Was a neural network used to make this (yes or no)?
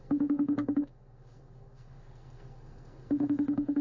yes